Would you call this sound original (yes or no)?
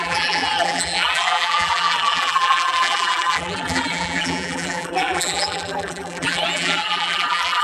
no